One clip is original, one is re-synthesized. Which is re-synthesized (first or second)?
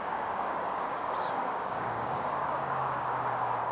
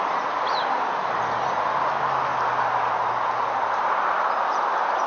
first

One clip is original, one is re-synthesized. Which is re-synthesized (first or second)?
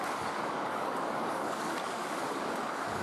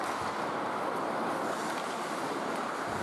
first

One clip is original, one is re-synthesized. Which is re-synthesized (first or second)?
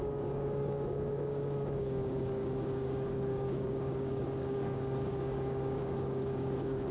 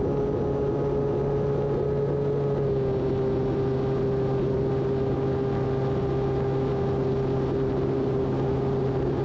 first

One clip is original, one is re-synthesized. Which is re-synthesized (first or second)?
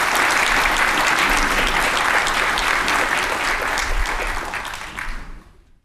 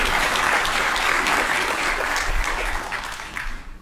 second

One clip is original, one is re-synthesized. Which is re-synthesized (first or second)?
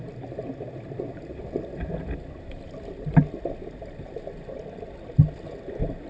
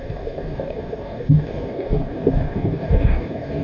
second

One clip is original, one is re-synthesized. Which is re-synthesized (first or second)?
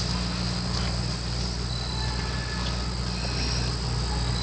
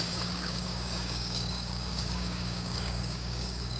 second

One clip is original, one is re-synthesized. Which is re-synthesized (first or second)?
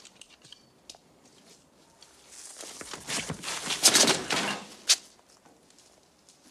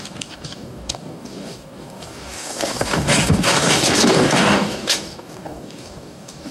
second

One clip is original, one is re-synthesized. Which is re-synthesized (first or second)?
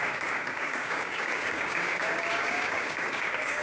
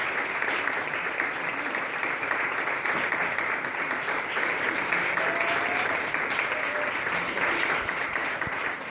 first